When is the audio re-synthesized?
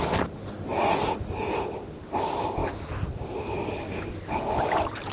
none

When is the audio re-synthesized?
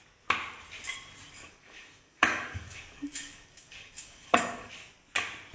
1.4-4.7 (codec, DAC)